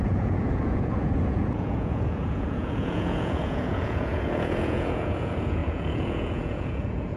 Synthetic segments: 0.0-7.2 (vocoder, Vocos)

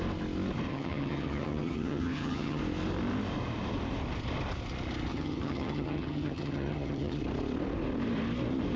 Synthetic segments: 0.7-2.6 (vocoder, HiFi-GAN); 5.1-7.2